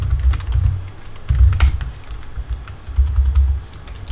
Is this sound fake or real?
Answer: real